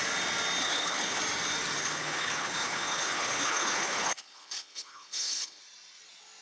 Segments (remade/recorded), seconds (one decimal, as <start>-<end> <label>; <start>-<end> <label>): 0.0-0.6 recorded; 0.6-1.2 remade; 1.2-1.8 recorded; 1.8-5.6 remade; 5.6-6.4 recorded